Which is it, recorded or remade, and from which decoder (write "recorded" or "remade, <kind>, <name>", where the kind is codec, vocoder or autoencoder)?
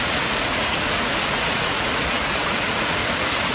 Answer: remade, vocoder, Vocos